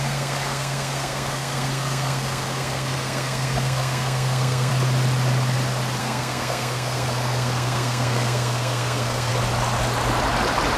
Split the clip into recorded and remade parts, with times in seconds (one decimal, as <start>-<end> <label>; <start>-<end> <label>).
0.0-4.7 remade; 4.7-6.0 recorded; 6.0-9.3 remade; 9.3-10.8 recorded